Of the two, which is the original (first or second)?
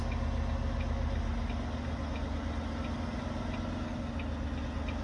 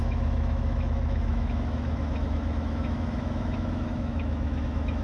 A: first